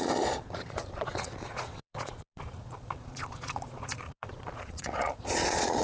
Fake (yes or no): yes